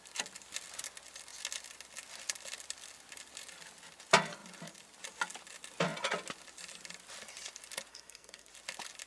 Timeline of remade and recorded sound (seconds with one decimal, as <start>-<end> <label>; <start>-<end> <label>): 0.0-7.9 recorded; 7.9-8.5 remade; 8.5-9.1 recorded